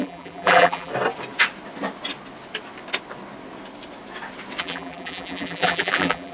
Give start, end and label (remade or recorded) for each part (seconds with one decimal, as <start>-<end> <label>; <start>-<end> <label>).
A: 0.0-0.9 remade; 0.9-4.6 recorded; 4.6-6.3 remade